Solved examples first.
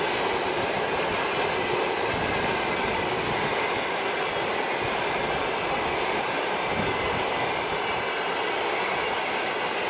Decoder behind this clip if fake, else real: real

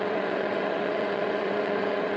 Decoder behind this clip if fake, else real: fake, vocoder, WaveNeXt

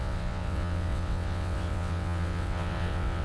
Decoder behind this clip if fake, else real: fake, vocoder, WaveNeXt